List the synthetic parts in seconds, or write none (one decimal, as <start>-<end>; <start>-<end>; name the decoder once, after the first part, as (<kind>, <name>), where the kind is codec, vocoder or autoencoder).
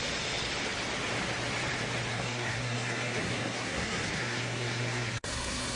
2.1-5.8 (codec, SNAC)